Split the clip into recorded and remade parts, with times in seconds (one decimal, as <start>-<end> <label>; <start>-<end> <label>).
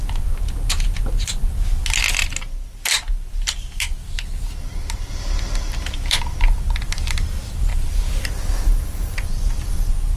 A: 0.0-10.2 recorded